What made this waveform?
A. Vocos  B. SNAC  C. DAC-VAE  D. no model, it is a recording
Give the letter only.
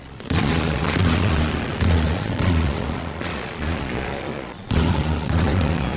A